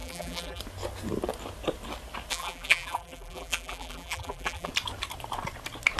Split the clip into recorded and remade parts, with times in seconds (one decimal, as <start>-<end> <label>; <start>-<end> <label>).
0.0-0.6 remade; 0.6-2.3 recorded; 2.3-4.7 remade; 4.7-6.0 recorded